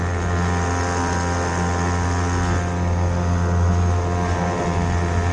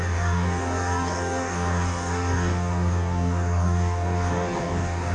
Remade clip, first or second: second